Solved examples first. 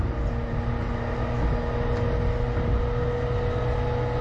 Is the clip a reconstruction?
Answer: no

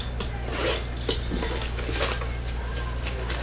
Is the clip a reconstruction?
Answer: no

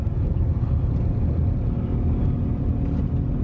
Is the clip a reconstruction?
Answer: no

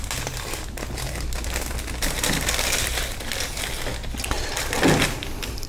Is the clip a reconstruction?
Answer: no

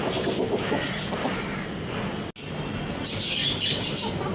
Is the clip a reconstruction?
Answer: no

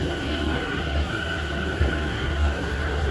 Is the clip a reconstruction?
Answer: yes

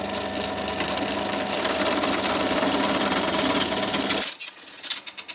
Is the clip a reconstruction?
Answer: no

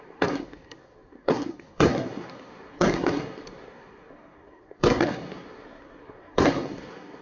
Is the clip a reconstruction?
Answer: yes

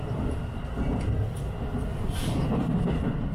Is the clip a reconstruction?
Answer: no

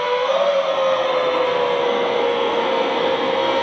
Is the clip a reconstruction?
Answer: yes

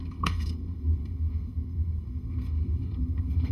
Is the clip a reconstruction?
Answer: yes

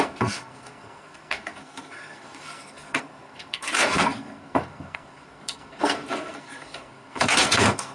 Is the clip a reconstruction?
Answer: yes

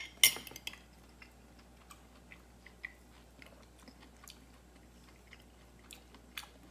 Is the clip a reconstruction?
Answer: no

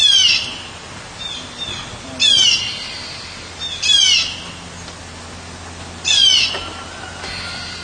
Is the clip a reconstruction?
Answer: no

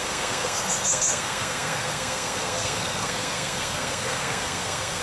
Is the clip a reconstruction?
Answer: yes